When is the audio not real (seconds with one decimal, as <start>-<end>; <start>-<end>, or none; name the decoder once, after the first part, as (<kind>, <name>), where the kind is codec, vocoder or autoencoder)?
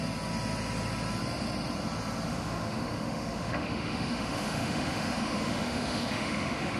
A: 2.3-6.8 (autoencoder, DAC-VAE)